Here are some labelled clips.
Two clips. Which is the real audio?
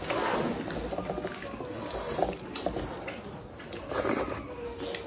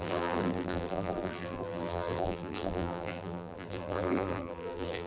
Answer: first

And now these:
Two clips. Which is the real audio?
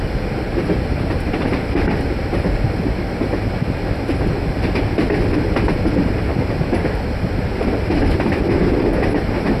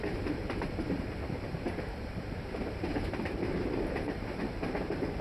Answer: first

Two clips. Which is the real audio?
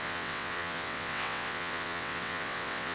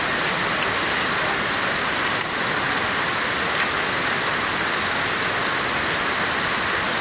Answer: second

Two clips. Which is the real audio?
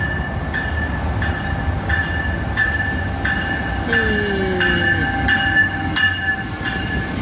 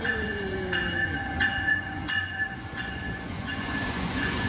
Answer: first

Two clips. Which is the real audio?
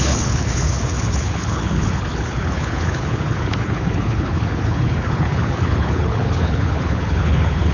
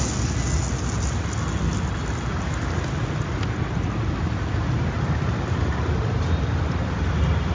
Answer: second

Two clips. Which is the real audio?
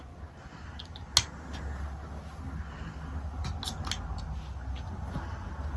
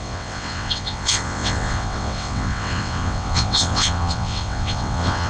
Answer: first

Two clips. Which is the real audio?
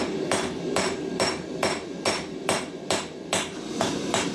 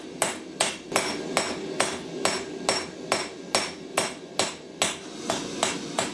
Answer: second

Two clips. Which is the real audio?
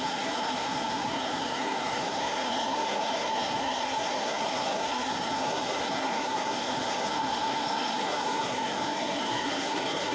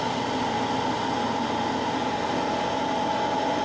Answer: second